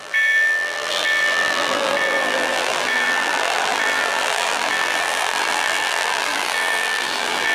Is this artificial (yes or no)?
yes